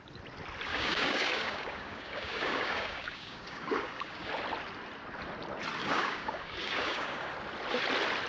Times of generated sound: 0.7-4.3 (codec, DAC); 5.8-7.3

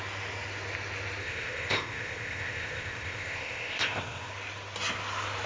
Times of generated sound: 1.2-4.3 (codec, ZipCodec)

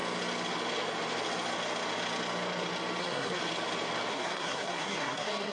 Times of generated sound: 3.0-3.4 (codec, SNAC); 4.1-5.5

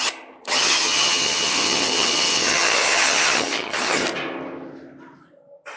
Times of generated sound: 0.5-4.0 (vocoder, HiFi-GAN)

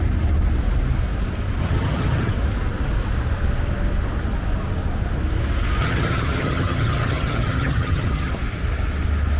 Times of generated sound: 1.6-2.3 (vocoder, HiFi-GAN); 5.8-8.3

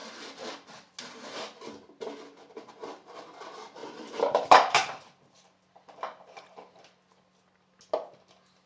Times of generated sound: 0.0-0.9 (vocoder, BigVGAN v2); 3.8-6.0